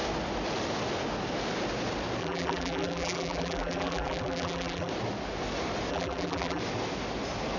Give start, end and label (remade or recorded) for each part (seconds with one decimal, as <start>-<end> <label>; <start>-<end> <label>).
0.0-2.2 recorded; 2.2-4.9 remade; 4.9-5.9 recorded; 5.9-6.6 remade; 6.6-7.6 recorded